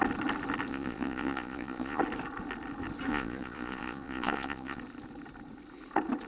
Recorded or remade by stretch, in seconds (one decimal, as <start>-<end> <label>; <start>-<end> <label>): 0.0-0.7 recorded; 0.7-2.0 remade; 2.0-3.1 recorded; 3.1-4.8 remade; 4.8-6.3 recorded